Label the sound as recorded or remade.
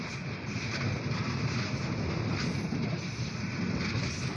recorded